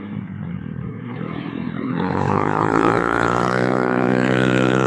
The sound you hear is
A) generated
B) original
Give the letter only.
A